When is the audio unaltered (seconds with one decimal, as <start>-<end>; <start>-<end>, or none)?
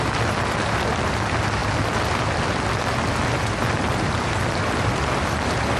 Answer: 0.0-5.8